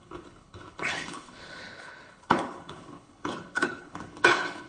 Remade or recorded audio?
remade